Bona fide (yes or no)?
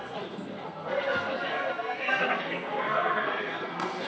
no